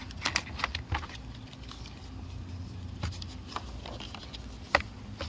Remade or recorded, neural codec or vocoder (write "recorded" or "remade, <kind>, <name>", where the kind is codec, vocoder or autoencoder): recorded